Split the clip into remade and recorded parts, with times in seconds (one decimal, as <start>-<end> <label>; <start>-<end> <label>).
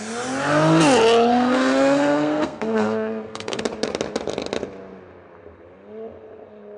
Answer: 0.0-1.3 recorded; 1.3-3.6 remade; 3.6-6.8 recorded